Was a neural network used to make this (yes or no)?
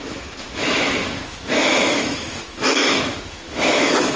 yes